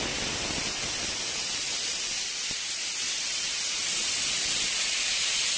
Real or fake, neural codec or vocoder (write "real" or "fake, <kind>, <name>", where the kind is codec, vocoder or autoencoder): real